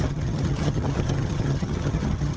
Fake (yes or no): yes